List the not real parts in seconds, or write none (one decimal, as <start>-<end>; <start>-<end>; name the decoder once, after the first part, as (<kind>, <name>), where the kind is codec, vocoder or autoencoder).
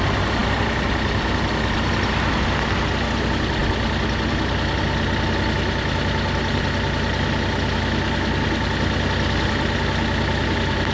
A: none